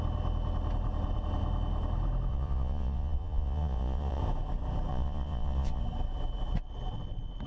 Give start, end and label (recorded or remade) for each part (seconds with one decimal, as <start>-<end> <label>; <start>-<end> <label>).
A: 0.0-2.3 recorded; 2.3-4.2 remade; 4.2-4.9 recorded; 4.9-5.8 remade; 5.8-7.5 recorded